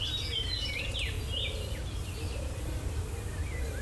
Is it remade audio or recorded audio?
recorded